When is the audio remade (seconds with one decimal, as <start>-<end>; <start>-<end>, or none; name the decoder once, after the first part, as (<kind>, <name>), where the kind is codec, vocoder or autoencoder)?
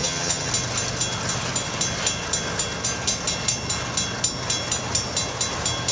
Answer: 0.0-0.5 (vocoder, HiFi-GAN)